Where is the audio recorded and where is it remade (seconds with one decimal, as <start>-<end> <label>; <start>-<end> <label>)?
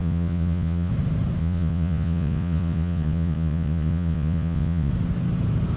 0.0-0.9 remade; 0.9-1.4 recorded; 1.4-4.9 remade; 4.9-5.8 recorded